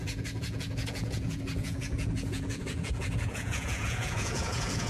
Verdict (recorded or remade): remade